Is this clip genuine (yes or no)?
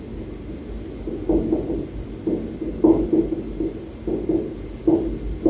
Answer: yes